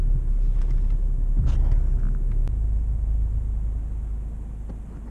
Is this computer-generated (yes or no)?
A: no